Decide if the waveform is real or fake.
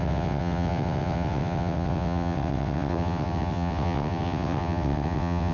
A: fake